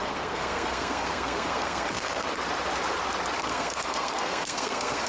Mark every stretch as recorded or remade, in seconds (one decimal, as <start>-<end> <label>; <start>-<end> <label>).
0.0-2.3 remade; 2.3-3.4 recorded; 3.4-5.1 remade